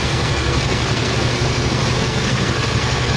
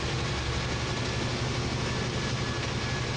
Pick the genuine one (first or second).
second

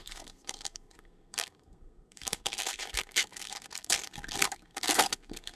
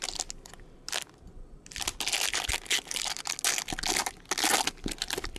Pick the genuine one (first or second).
second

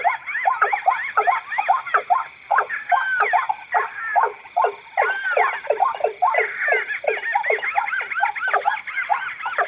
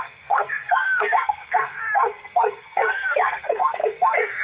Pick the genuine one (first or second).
first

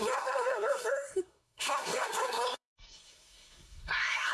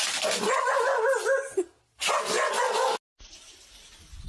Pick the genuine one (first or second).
second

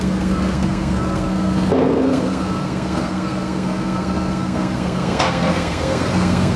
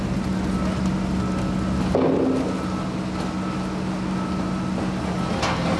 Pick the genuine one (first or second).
second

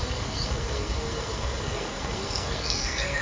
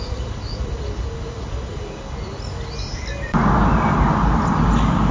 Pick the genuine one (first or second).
second